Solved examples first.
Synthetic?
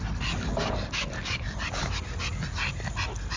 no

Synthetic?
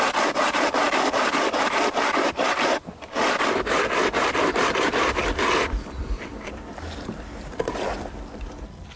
yes